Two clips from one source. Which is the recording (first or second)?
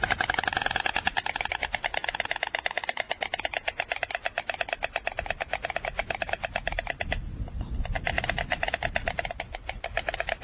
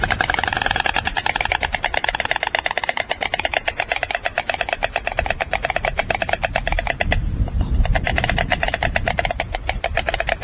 first